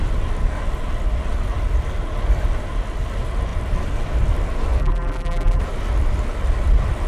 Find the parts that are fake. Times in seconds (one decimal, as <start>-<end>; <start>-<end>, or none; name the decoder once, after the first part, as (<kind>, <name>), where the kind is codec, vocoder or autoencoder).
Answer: 4.8-5.6 (vocoder, BigVGAN v2)